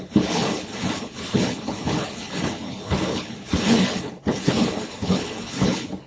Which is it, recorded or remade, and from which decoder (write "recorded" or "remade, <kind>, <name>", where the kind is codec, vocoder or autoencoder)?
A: remade, codec, HILCodec